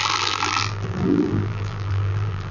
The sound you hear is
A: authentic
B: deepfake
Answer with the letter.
B